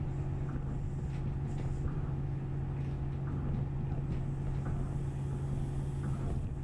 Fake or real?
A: real